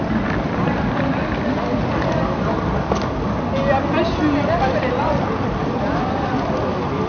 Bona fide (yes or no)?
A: yes